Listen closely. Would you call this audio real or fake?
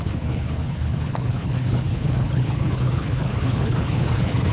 fake